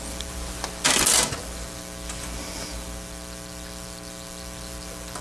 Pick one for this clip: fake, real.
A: real